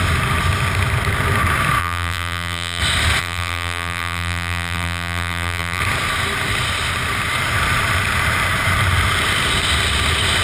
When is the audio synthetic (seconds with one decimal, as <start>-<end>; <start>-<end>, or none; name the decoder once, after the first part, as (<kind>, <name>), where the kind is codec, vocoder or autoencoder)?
1.8-2.8 (vocoder, BigVGAN v2); 3.2-5.8